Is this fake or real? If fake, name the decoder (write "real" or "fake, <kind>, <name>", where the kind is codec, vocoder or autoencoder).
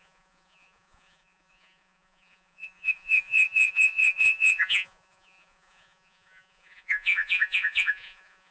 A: fake, vocoder, Vocos